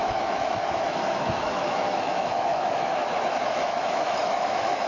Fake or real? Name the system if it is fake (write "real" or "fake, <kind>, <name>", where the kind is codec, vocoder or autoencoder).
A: fake, autoencoder, DAC-VAE